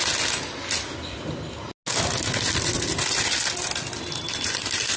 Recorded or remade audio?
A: recorded